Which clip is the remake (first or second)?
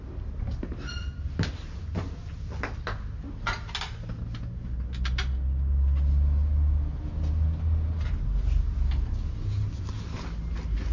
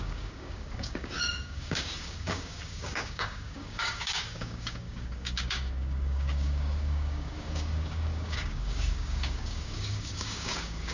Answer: second